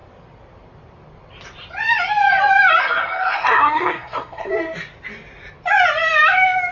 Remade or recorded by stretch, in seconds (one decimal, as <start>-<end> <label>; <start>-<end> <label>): 0.0-2.8 recorded; 2.8-4.5 remade; 4.5-6.7 recorded